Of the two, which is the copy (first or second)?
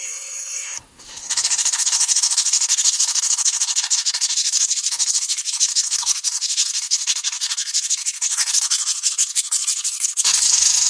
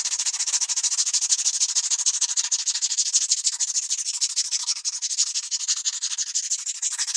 first